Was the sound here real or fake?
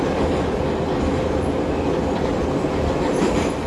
real